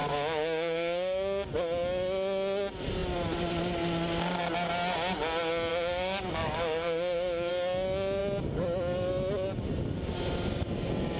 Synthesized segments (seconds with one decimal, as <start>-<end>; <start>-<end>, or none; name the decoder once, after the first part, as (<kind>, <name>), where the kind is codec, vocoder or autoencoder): 0.0-1.5 (codec, DAC); 5.7-7.5

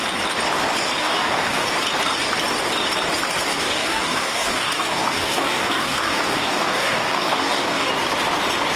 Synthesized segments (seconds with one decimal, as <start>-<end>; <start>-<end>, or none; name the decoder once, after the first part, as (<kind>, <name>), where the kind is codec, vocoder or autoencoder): 1.0-1.7 (codec, DAC); 3.5-7.9

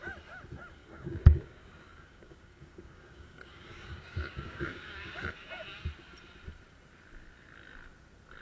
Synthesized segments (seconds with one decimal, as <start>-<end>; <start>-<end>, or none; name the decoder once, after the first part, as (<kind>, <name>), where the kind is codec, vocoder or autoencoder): 0.8-5.3 (codec, DAC)

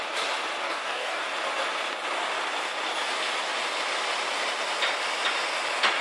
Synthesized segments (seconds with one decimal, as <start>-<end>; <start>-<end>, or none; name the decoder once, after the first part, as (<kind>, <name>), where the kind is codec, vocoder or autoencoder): 0.6-1.2 (codec, DAC)